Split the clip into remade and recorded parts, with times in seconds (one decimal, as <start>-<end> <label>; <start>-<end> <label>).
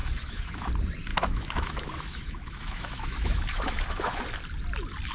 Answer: 0.0-0.7 remade; 0.7-1.1 recorded; 1.1-4.2 remade; 4.2-5.1 recorded